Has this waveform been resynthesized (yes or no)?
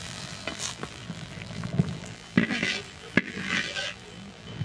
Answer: yes